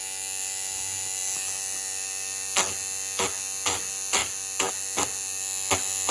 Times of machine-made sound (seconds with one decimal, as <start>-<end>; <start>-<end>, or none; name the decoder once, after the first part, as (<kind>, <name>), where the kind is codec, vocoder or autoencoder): none